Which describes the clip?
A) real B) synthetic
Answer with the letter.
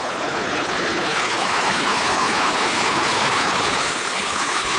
B